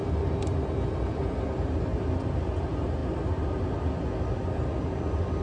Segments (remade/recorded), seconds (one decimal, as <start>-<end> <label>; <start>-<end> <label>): 0.0-5.4 recorded